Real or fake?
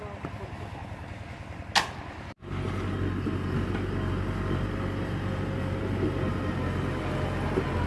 real